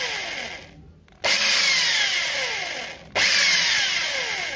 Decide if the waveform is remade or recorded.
recorded